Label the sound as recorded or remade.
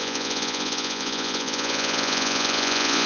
remade